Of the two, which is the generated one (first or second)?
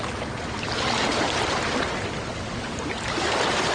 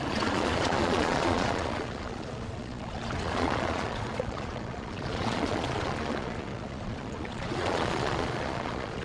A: second